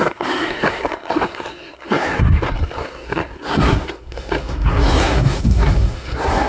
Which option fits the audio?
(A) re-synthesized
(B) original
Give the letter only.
A